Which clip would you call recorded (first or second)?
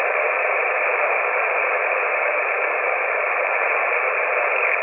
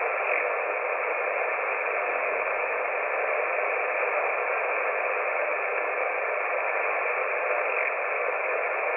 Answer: second